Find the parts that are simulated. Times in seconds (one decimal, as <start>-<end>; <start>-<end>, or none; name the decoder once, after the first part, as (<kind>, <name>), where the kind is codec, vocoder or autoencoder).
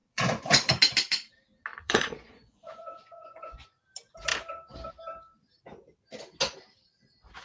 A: 0.0-0.7 (vocoder, Vocos); 1.7-3.8